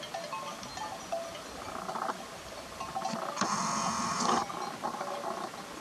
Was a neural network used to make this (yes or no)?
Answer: no